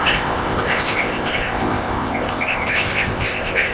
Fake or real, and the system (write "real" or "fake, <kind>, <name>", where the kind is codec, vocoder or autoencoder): fake, codec, ZipCodec